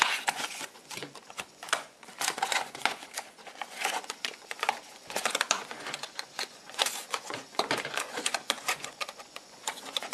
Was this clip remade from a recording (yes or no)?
yes